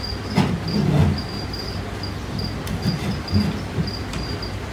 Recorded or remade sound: recorded